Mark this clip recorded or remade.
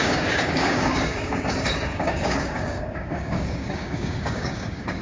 remade